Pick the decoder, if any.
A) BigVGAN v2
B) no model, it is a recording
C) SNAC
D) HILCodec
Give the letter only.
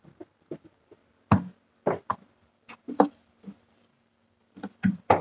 A